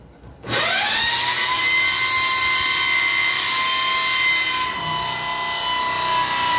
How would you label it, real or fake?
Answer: real